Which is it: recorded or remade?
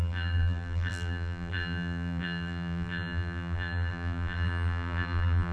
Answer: remade